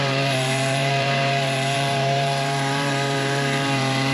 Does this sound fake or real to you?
fake